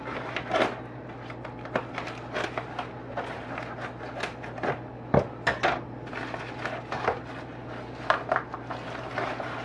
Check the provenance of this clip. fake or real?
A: real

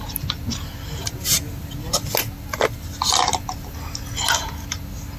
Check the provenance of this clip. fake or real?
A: real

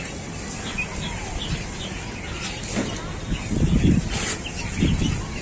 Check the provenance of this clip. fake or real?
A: real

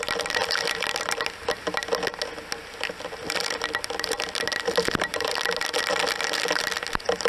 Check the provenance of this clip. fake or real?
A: real